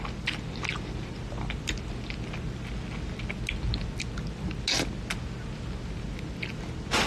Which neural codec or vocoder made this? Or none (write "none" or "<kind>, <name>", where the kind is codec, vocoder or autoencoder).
none